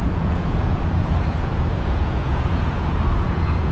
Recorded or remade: remade